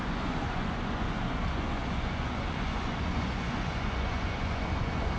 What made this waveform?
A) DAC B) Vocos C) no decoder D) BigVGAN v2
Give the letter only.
B